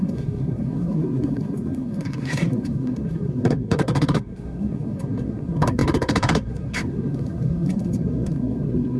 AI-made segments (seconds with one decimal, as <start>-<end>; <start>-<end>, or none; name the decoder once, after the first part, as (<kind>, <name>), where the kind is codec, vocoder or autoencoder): 0.0-9.0 (codec, SNAC)